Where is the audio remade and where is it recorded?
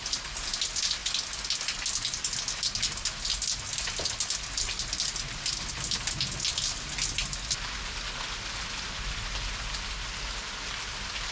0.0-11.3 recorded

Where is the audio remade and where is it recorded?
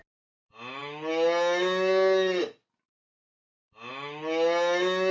0.0-5.1 recorded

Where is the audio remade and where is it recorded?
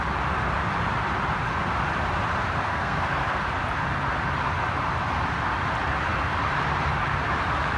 0.0-2.7 recorded; 2.7-3.4 remade; 3.4-7.8 recorded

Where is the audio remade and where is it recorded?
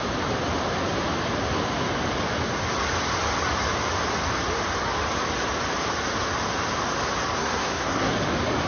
0.0-7.4 recorded; 7.4-8.1 remade; 8.1-8.7 recorded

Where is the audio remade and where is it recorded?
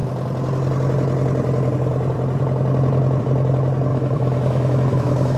0.0-3.9 recorded; 3.9-5.4 remade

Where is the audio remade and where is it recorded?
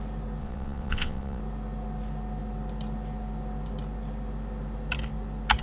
0.0-0.4 recorded; 0.4-1.4 remade; 1.4-5.6 recorded